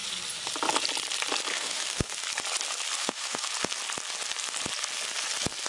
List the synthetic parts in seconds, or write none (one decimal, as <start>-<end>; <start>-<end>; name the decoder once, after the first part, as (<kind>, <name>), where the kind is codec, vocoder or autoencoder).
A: 1.5-2.2 (autoencoder, DAC-VAE); 3.0-3.5